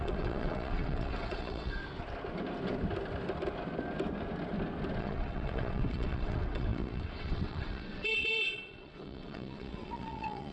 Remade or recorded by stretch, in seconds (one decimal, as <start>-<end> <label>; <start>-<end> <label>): 0.0-1.8 remade; 1.8-5.0 recorded; 5.0-10.5 remade